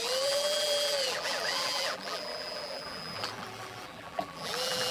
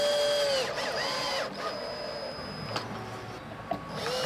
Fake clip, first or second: first